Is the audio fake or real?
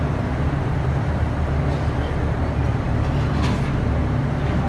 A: real